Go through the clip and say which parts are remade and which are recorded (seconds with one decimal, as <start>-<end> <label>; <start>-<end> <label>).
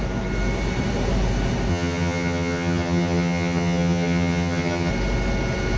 0.0-1.7 recorded; 1.7-4.9 remade; 4.9-5.8 recorded